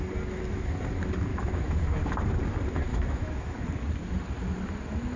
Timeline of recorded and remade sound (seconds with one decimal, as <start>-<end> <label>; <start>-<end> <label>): 0.0-1.3 recorded; 1.3-1.8 remade; 1.8-2.9 recorded; 2.9-3.5 remade; 3.5-5.2 recorded